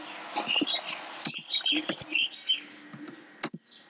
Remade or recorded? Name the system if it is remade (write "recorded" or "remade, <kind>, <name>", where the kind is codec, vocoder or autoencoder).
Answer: recorded